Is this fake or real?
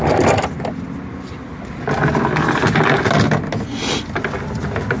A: real